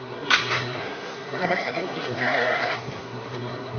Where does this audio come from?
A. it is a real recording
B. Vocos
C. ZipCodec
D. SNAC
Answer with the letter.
D